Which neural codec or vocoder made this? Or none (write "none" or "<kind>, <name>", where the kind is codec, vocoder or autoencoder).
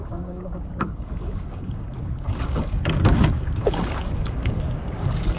codec, DAC